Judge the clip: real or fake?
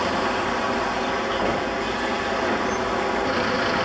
real